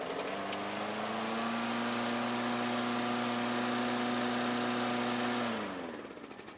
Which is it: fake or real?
real